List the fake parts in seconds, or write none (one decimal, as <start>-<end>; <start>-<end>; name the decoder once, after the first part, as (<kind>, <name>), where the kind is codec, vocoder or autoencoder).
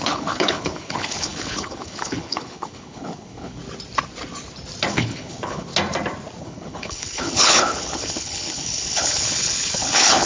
0.0-3.6 (codec, HILCodec); 4.9-5.7; 6.4-10.3